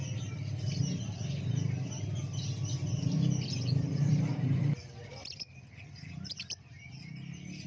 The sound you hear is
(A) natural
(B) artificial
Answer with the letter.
B